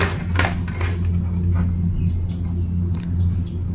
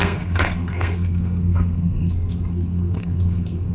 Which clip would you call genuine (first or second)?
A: first